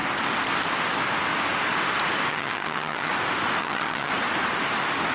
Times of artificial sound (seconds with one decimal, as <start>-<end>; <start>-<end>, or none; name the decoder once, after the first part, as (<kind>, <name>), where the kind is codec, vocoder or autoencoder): 2.3-3.1 (vocoder, HiFi-GAN); 3.6-4.1